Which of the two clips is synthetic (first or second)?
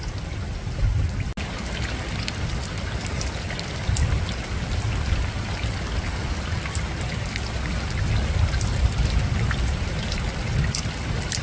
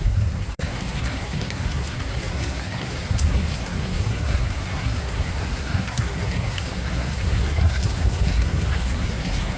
second